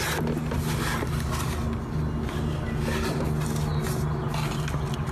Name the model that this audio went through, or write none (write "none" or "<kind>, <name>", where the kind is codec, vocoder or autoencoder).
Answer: none